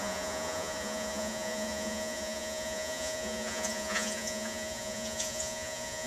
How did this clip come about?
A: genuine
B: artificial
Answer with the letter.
B